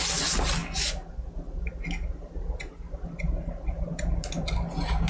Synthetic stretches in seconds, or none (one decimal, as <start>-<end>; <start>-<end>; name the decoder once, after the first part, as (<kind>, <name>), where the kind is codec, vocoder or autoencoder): none